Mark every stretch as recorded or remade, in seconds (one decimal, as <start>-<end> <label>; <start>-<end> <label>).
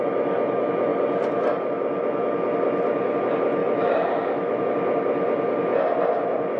0.0-3.6 recorded; 3.6-4.6 remade; 4.6-6.6 recorded